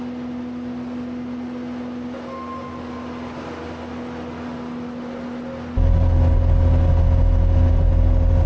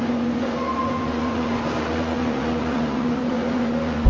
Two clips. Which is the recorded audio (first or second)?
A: first